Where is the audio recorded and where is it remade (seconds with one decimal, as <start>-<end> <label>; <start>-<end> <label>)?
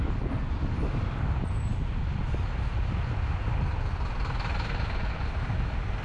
0.0-6.0 recorded